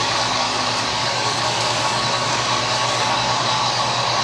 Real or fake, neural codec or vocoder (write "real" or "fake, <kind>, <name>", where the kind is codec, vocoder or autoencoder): fake, codec, DAC